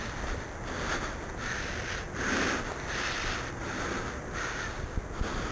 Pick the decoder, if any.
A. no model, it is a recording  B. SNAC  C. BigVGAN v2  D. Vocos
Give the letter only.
A